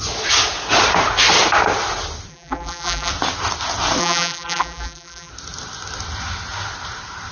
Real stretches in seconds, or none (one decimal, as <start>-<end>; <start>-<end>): 0.0-2.3; 3.1-4.0; 5.3-7.3